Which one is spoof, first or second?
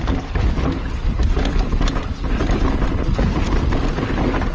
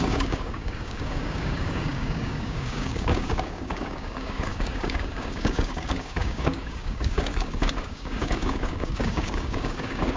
second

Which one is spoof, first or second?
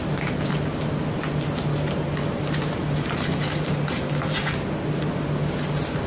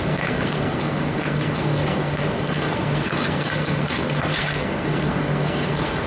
second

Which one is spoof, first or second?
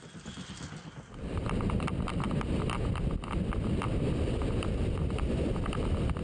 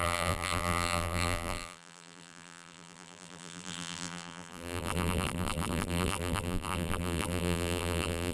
second